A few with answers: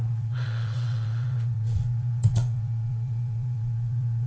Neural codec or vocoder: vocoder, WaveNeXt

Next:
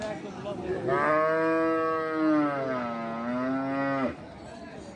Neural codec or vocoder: none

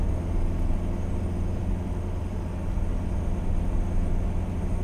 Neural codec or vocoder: none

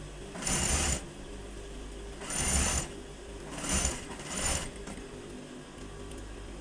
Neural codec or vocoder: none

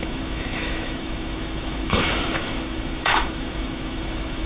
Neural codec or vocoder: autoencoder, DAC-VAE